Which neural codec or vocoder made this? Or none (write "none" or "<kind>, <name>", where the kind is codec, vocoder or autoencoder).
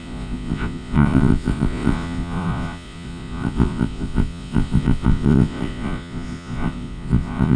vocoder, Vocos